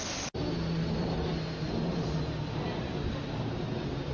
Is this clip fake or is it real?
real